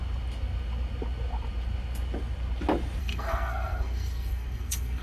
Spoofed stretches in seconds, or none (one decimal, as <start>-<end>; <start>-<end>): 3.0-5.0